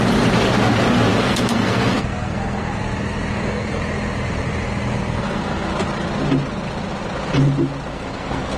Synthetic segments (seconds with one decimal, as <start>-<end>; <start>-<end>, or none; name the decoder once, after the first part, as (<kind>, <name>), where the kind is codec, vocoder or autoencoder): 1.1-2.8 (codec, SNAC); 3.3-3.8; 5.0-5.7; 7.9-8.6